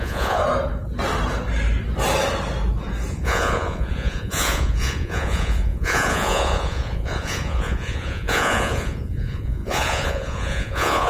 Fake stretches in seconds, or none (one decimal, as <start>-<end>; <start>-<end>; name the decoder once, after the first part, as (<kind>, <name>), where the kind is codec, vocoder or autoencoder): 0.0-0.4 (vocoder, Vocos); 3.1-11.1